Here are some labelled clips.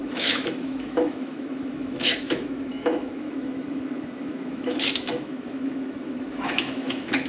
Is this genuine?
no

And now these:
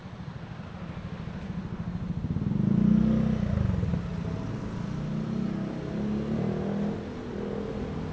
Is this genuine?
yes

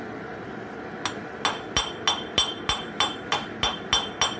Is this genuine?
yes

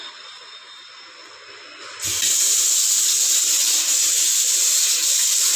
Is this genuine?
yes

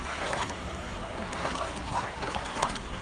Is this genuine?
no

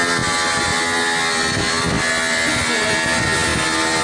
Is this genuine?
yes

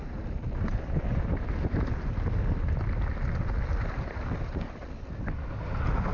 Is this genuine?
yes